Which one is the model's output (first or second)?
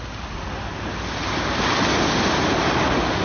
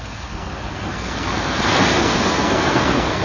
second